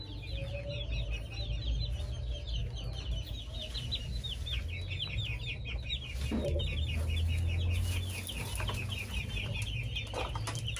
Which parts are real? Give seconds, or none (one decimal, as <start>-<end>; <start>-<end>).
0.0-10.8